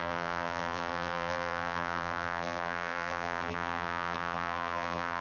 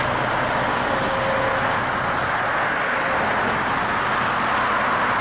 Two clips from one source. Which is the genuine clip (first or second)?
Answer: second